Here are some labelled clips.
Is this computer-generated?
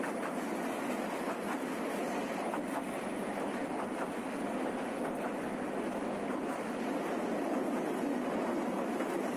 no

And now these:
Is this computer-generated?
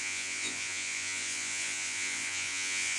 yes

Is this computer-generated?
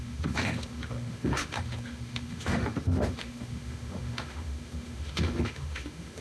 yes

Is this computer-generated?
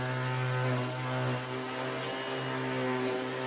no